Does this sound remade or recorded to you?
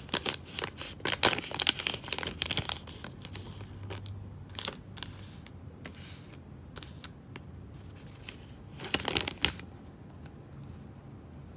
recorded